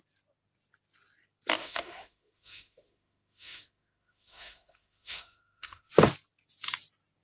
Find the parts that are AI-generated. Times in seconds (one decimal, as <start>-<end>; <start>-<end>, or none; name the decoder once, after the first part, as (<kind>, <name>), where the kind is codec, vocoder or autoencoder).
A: 1.6-5.9 (autoencoder, DAC-VAE)

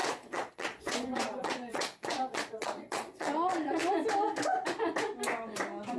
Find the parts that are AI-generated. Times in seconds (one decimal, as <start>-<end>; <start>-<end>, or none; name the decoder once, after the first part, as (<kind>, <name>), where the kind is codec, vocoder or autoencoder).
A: 0.0-3.8 (vocoder, Vocos)

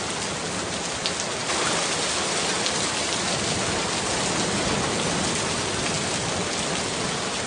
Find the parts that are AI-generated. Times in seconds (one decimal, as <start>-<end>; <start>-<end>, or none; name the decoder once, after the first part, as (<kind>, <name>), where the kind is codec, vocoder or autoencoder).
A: none

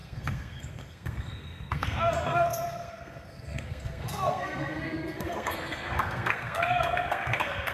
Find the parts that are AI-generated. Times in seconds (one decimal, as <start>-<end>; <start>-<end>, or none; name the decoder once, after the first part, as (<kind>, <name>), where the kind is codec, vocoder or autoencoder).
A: 0.0-7.7 (codec, SNAC)

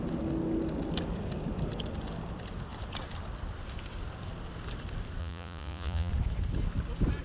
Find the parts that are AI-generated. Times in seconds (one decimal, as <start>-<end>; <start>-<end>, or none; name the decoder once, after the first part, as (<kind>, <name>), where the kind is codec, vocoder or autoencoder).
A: 5.2-6.1 (vocoder, Vocos)